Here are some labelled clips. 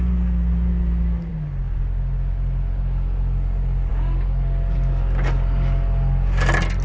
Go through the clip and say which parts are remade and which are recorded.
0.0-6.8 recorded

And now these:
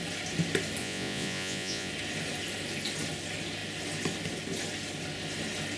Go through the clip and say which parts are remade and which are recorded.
0.0-0.8 recorded; 0.8-1.9 remade; 1.9-5.8 recorded

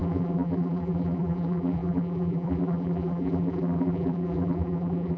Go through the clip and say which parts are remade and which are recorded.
0.0-5.2 remade

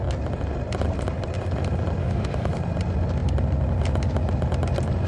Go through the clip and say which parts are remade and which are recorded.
0.0-2.0 recorded; 2.0-2.5 remade; 2.5-5.1 recorded

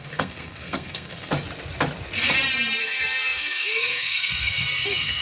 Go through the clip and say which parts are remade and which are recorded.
0.0-1.3 remade; 1.3-2.8 recorded; 2.8-5.2 remade

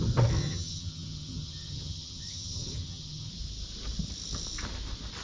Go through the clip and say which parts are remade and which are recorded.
0.0-0.4 recorded; 0.4-3.3 remade; 3.3-5.2 recorded

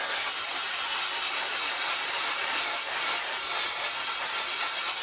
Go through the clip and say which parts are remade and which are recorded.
0.0-0.5 recorded; 0.5-3.5 remade; 3.5-5.0 recorded